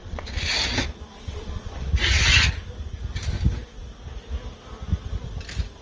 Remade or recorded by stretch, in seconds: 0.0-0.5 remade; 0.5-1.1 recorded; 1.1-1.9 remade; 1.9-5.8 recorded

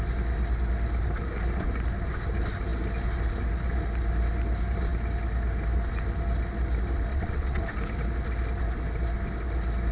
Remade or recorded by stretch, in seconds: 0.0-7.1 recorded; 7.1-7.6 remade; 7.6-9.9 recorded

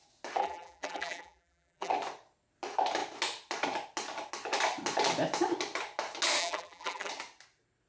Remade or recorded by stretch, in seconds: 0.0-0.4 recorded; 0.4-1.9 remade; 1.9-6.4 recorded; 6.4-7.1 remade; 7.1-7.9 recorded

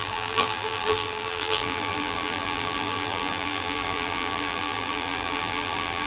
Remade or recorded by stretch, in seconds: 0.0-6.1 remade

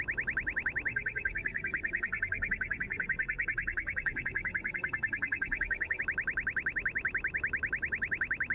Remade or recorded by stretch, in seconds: 0.0-0.9 recorded; 0.9-6.0 remade; 6.0-8.5 recorded